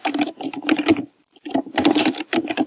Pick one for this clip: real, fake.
fake